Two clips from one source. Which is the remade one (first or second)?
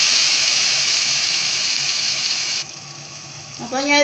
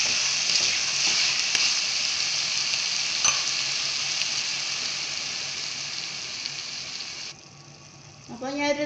first